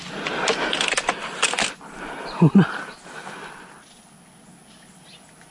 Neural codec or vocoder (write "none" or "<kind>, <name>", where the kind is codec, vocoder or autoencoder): none